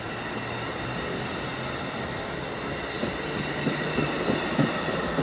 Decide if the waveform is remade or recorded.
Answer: recorded